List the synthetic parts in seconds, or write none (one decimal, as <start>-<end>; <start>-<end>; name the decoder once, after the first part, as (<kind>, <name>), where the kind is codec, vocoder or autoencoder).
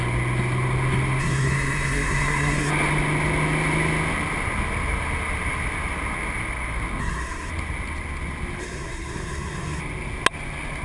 1.2-2.7 (codec, SNAC); 7.0-7.5; 8.6-9.8